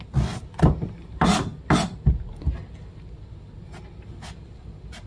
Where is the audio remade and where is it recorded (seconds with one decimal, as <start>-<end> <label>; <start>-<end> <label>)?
0.0-5.1 recorded